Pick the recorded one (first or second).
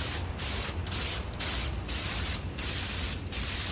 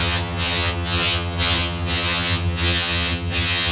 first